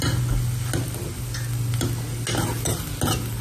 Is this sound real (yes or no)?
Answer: yes